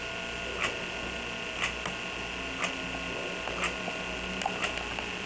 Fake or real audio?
real